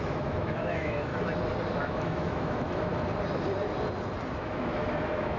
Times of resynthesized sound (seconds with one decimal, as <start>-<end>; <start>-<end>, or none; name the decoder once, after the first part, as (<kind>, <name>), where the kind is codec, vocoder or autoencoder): 0.0-1.1 (autoencoder, DAC-VAE); 1.8-2.9; 4.3-5.4